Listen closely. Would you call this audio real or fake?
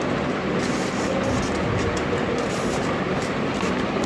real